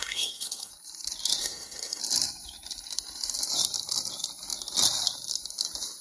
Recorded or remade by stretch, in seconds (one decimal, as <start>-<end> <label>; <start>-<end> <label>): 0.0-0.7 remade; 0.7-1.4 recorded; 1.4-2.0 remade; 2.0-6.0 recorded